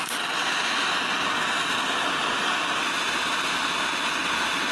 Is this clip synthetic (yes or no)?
no